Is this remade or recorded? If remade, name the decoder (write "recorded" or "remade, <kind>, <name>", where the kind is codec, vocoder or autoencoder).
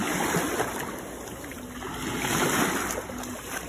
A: recorded